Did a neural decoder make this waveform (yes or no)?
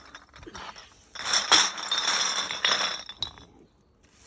no